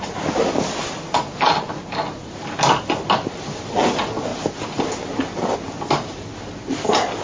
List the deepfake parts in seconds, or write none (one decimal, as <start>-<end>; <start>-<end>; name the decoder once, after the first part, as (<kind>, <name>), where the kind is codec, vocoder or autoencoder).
none